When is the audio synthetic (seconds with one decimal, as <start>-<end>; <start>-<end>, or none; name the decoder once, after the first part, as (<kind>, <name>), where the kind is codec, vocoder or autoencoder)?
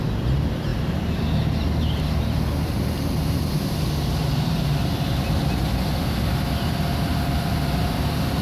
none